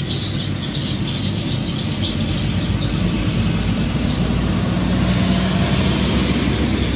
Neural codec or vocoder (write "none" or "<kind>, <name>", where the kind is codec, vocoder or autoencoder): none